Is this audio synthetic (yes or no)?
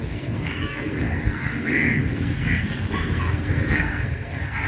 yes